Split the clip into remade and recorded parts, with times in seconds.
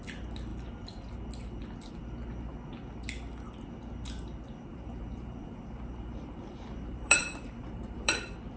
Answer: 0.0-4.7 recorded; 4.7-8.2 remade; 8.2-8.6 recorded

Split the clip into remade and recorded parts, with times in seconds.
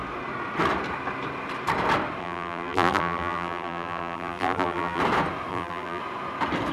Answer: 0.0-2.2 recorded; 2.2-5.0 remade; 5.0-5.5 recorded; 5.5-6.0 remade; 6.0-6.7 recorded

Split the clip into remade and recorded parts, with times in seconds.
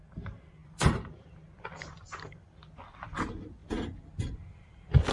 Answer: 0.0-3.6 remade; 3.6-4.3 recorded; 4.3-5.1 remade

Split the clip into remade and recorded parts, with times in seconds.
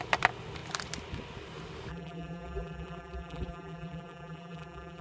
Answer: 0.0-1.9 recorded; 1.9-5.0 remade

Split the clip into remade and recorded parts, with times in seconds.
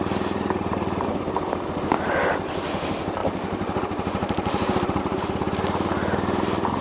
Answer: 0.0-3.2 recorded; 3.2-5.0 remade; 5.0-6.8 recorded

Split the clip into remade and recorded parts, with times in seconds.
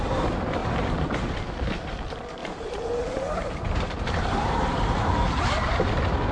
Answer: 0.0-0.6 recorded; 0.6-1.4 remade; 1.4-2.4 recorded; 2.4-5.1 remade; 5.1-6.3 recorded